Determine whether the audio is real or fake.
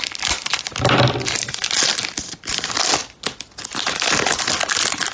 real